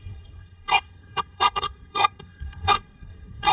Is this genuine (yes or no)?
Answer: no